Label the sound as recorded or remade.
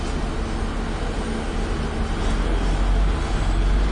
recorded